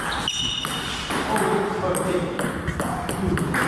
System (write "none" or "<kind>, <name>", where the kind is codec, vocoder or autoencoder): none